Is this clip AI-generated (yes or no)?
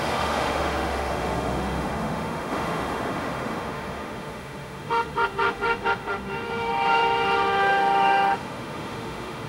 yes